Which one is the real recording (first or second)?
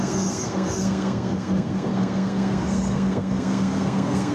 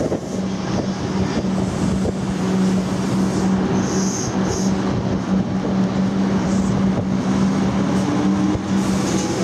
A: second